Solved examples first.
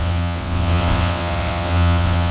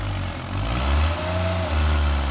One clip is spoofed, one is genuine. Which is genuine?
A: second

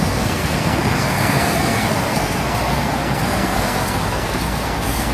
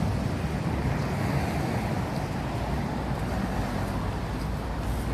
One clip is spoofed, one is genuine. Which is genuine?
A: second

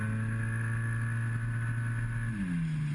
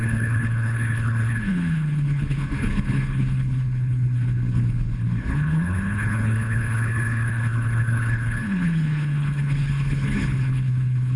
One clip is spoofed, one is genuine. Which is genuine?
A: first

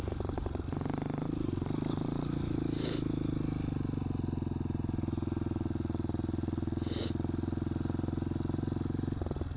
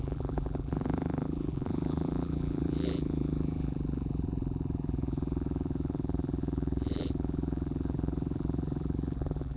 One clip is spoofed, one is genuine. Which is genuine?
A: first